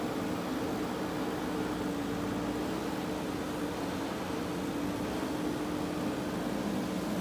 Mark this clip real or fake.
real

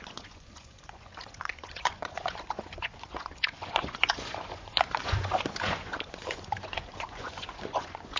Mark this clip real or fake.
fake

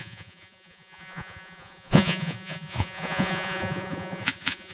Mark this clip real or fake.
fake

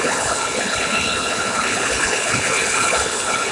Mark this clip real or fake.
fake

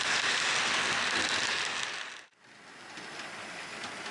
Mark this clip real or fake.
real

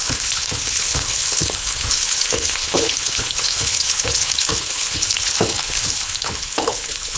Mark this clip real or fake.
fake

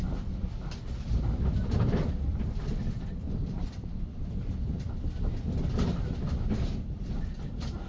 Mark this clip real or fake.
fake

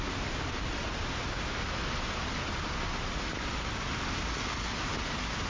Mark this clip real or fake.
real